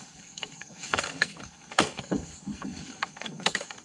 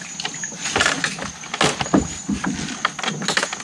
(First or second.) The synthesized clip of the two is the first